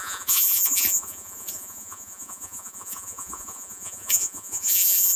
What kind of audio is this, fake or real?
fake